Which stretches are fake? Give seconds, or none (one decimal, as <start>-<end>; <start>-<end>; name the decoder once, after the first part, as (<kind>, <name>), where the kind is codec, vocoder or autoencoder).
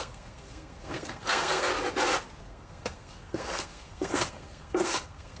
0.0-1.7 (codec, SNAC); 2.4-5.4